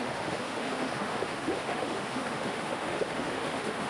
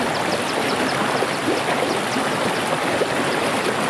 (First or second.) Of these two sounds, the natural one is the second